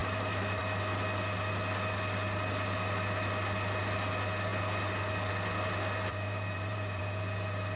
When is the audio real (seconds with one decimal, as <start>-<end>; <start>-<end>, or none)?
0.6-6.1; 7.0-7.8